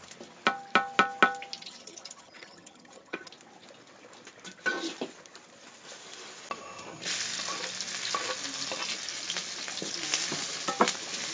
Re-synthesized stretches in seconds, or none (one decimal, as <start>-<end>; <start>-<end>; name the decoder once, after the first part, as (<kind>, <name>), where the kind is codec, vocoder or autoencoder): 1.6-3.3 (vocoder, HiFi-GAN)